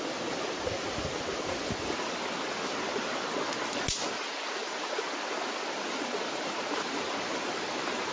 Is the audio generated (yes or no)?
no